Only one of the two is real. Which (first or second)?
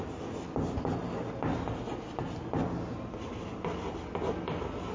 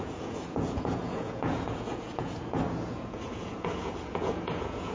first